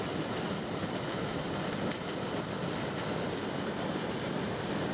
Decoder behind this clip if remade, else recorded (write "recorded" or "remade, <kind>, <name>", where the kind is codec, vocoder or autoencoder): recorded